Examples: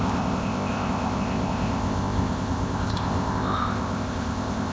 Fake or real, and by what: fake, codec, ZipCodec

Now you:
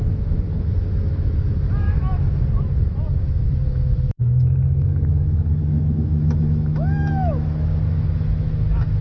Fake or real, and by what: fake, autoencoder, DAC-VAE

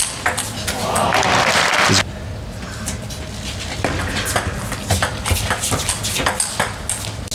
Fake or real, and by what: real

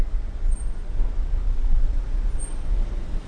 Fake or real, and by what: real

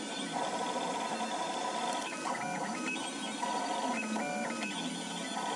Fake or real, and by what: real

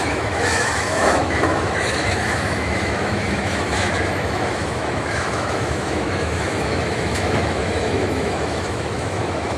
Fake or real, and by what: fake, autoencoder, DAC-VAE